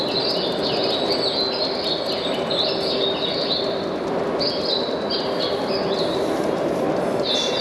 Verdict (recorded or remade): recorded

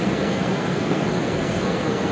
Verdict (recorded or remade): remade